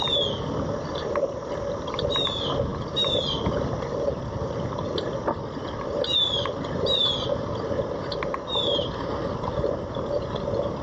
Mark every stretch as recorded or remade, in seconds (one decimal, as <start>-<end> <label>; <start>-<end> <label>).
0.0-10.8 recorded